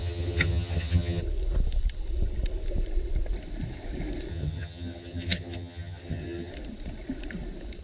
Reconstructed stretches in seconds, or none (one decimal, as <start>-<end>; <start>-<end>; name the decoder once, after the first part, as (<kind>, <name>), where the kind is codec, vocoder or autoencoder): 0.0-1.2 (vocoder, HiFi-GAN); 4.3-6.5